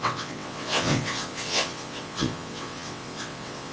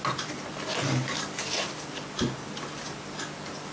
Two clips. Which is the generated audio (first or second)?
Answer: first